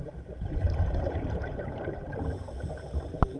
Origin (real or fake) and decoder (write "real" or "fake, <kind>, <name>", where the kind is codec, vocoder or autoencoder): fake, vocoder, BigVGAN v2